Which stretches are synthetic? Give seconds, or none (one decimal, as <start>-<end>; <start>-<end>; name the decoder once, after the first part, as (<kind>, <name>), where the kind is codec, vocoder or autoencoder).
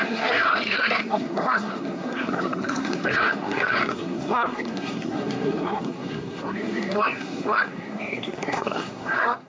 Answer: 0.0-9.5 (codec, SNAC)